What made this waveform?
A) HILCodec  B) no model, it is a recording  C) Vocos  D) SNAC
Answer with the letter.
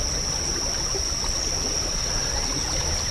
B